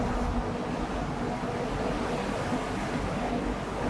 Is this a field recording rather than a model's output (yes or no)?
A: yes